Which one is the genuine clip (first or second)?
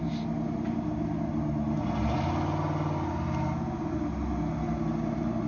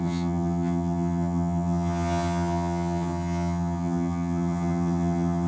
first